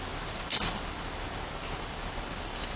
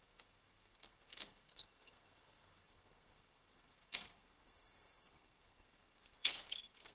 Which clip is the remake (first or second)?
second